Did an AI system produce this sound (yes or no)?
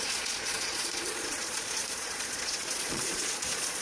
yes